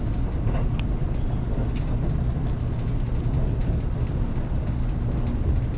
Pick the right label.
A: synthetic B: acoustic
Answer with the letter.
B